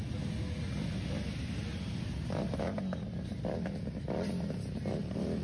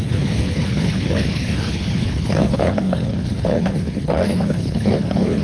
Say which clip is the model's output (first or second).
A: second